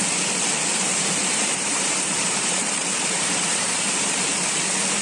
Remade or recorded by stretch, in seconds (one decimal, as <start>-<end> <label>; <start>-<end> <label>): 0.0-1.2 recorded; 1.2-4.2 remade; 4.2-5.0 recorded